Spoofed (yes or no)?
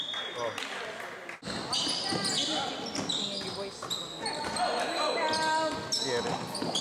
no